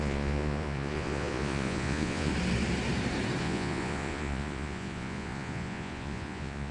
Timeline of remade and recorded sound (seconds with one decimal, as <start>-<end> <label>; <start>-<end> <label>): 0.0-2.3 remade; 2.3-3.4 recorded; 3.4-6.7 remade